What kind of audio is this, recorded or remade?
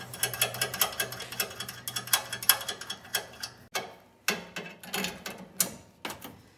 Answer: recorded